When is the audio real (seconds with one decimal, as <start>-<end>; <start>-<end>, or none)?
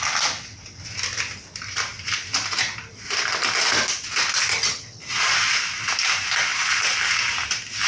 0.0-4.5; 5.0-7.9